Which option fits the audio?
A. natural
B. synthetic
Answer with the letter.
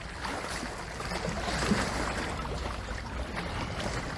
A